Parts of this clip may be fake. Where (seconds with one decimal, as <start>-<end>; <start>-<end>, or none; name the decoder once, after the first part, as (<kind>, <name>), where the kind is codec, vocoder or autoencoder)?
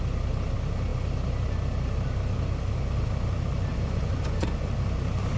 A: 3.7-4.7 (vocoder, Vocos)